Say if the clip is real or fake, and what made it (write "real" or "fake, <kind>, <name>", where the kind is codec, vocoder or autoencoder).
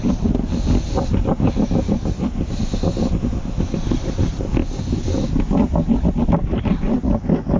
real